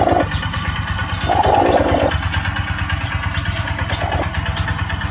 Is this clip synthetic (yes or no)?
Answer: no